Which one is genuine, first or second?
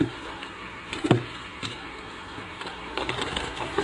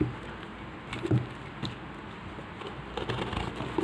second